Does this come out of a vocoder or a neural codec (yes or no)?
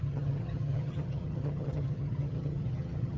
yes